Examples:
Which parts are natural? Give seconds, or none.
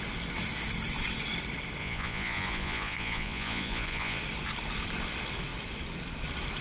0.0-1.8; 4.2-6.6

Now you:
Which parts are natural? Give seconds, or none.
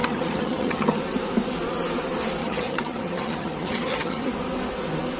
1.0-2.4; 4.3-5.2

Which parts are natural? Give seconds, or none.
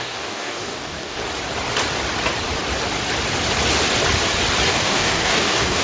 1.2-4.7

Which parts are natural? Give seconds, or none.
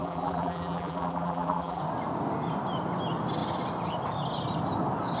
1.8-5.2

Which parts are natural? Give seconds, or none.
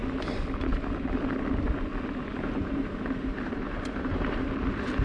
0.0-2.3; 4.5-5.0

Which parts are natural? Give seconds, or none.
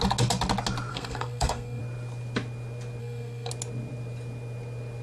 0.0-0.9; 1.8-3.0; 3.5-5.0